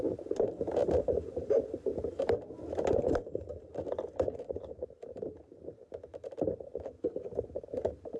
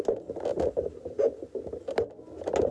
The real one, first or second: second